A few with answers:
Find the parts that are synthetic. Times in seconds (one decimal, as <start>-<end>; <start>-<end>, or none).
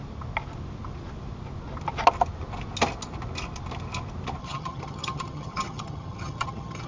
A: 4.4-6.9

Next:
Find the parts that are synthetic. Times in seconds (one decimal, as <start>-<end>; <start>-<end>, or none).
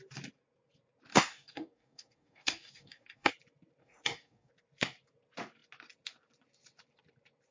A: 1.1-3.3; 3.8-4.5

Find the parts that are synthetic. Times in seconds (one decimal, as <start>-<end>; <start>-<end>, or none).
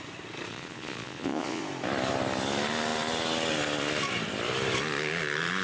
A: 0.5-1.6